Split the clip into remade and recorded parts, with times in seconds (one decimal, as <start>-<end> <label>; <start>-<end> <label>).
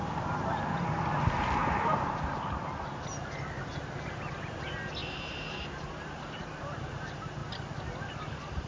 0.0-1.6 recorded; 1.6-2.6 remade; 2.6-5.0 recorded; 5.0-6.5 remade; 6.5-8.7 recorded